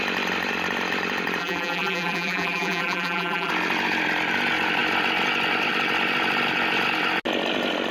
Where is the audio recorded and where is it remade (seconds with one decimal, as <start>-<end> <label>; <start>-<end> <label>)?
0.0-1.4 recorded; 1.4-3.5 remade; 3.5-7.9 recorded